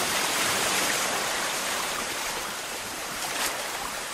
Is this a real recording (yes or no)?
no